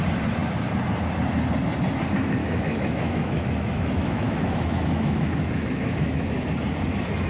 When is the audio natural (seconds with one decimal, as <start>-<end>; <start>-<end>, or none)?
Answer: 0.0-2.4; 6.5-7.3